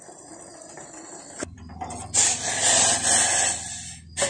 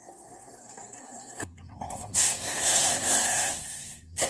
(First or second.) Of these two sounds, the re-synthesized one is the second